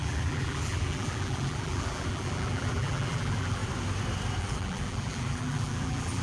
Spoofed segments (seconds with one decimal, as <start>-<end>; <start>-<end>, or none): 0.0-3.6; 4.4-6.2